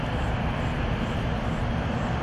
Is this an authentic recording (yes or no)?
yes